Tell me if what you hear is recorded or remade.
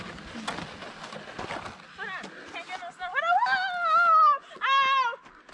recorded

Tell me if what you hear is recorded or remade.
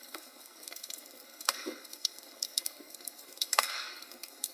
remade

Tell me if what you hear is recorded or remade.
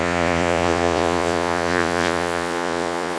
remade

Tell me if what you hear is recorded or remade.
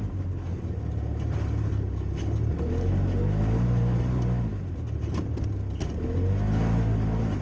recorded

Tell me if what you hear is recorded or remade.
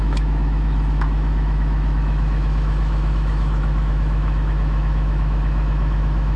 remade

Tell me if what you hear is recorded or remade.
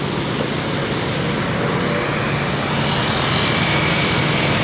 recorded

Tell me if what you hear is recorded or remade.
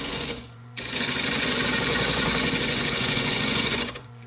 remade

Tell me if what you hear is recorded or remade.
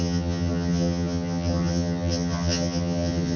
remade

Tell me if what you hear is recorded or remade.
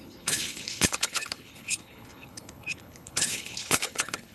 remade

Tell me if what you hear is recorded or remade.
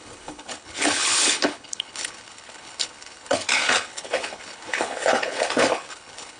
remade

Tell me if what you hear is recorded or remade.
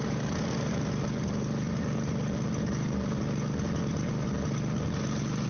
recorded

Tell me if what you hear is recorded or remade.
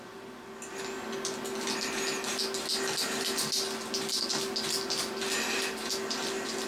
recorded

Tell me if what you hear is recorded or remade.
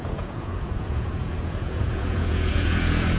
remade